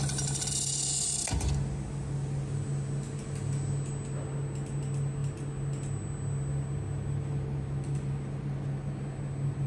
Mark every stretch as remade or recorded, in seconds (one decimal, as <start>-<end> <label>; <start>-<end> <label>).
0.0-9.7 recorded